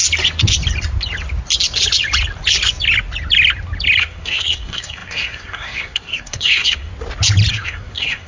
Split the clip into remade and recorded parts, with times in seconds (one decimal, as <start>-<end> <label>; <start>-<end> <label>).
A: 0.0-4.0 recorded; 4.0-6.9 remade; 6.9-7.5 recorded; 7.5-8.3 remade